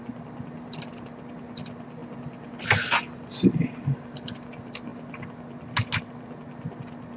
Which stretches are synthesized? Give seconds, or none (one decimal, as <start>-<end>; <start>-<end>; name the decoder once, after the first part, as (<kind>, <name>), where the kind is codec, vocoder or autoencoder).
none